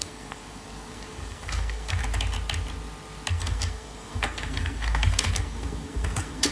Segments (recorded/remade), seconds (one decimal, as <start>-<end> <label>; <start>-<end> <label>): 0.0-2.0 remade; 2.0-3.3 recorded; 3.3-6.5 remade